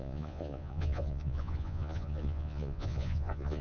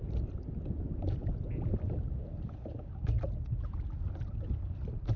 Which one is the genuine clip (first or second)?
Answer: second